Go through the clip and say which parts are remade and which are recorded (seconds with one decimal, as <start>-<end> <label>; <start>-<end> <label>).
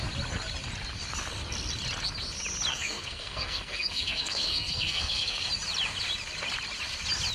0.0-2.7 recorded; 2.7-5.5 remade; 5.5-7.3 recorded